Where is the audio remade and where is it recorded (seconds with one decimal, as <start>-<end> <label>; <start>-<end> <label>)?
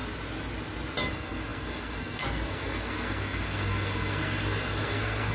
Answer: 0.0-1.1 recorded; 1.1-5.3 remade